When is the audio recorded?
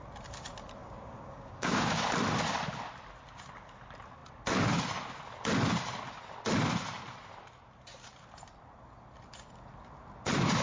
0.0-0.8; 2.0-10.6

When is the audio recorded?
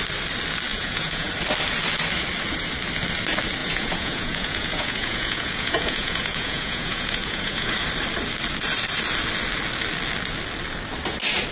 0.0-0.7; 1.3-3.6; 7.7-11.5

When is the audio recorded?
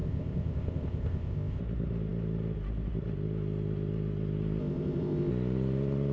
1.6-4.6; 5.3-6.1